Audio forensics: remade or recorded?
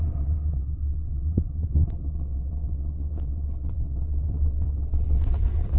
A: remade